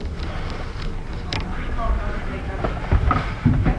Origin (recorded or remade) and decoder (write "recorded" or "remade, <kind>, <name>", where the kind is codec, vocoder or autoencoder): recorded